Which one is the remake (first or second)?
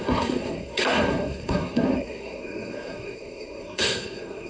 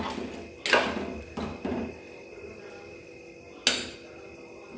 first